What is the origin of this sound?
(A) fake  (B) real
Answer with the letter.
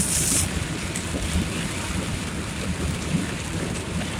A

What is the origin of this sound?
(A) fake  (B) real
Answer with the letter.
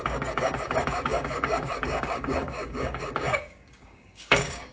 A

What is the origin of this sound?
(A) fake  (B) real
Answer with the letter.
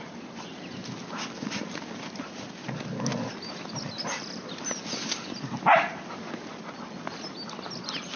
B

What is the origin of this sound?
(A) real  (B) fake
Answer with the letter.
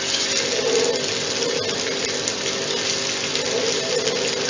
A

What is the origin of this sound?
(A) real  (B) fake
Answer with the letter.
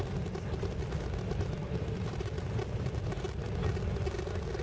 A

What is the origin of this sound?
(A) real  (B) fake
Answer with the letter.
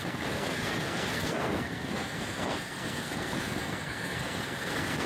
B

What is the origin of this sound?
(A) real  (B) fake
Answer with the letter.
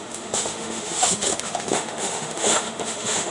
B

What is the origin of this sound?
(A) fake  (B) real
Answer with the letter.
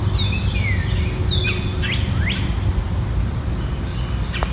B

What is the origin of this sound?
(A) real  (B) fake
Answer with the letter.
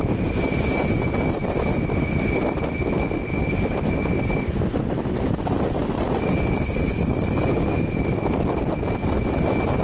A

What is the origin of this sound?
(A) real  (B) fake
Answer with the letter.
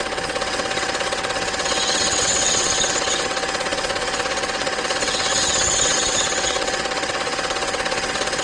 B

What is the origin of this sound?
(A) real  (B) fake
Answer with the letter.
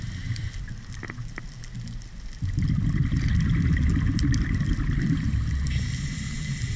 A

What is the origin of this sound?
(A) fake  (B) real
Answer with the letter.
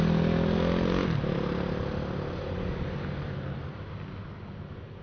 B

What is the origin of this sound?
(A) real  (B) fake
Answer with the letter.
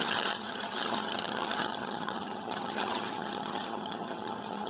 B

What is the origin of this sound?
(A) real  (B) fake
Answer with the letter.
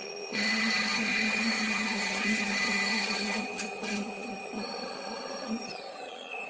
B